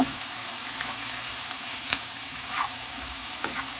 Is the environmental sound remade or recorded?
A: remade